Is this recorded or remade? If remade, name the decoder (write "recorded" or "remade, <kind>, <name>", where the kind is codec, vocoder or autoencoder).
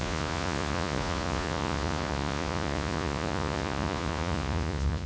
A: remade, vocoder, Vocos